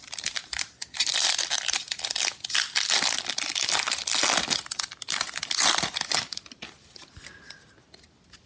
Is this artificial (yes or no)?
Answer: no